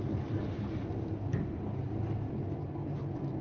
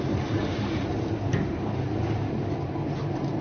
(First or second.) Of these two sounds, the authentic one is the first